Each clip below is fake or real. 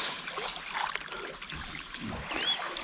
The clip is real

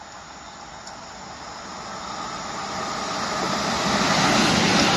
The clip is real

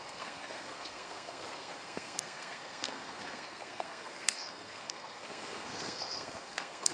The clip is fake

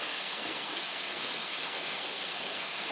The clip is fake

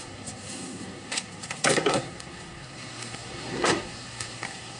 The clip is fake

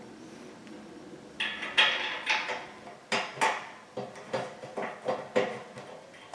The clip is real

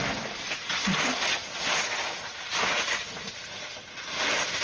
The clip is real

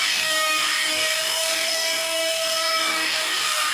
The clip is fake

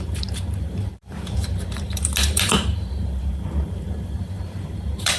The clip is fake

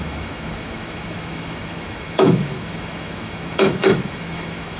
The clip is fake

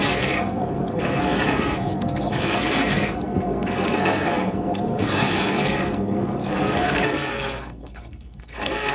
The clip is fake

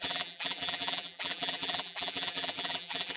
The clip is fake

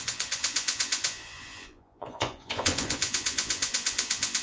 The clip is fake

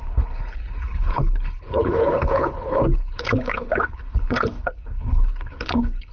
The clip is fake